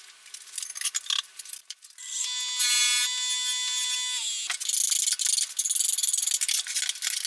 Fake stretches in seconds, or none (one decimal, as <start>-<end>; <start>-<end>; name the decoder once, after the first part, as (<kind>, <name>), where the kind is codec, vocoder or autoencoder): none